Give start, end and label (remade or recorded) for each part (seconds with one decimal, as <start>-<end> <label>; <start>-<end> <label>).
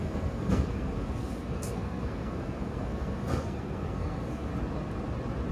0.0-4.5 remade; 4.5-5.5 recorded